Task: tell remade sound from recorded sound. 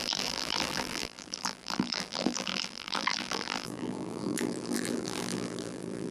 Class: remade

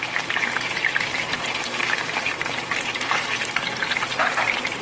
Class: remade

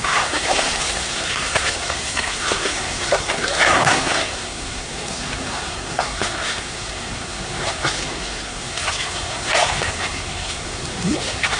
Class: remade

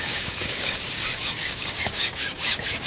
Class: remade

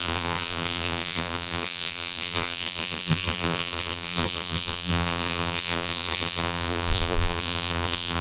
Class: remade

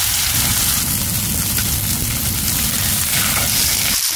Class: recorded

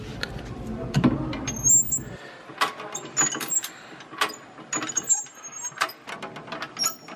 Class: recorded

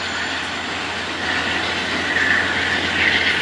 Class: recorded